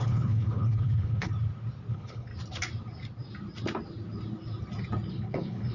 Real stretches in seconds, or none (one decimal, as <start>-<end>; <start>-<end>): 1.3-1.9; 2.3-5.1